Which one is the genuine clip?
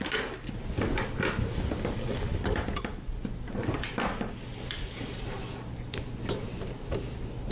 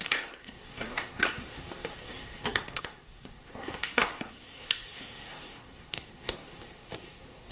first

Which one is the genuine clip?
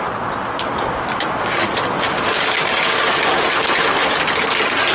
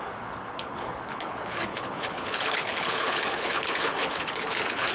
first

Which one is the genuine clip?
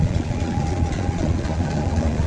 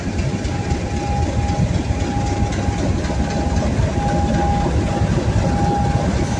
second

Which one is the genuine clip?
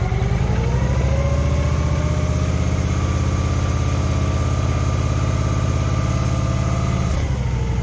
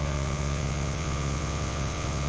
first